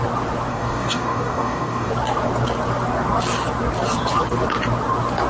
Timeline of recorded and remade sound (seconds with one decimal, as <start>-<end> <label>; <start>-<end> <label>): 0.0-0.5 recorded; 0.5-1.9 remade; 1.9-5.3 recorded